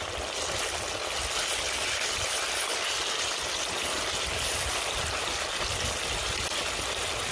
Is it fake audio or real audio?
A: real